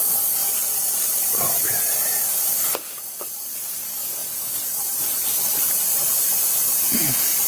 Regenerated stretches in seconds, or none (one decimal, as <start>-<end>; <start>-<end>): none